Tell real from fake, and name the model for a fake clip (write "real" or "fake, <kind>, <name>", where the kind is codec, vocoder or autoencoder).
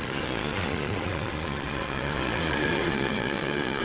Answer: fake, vocoder, Vocos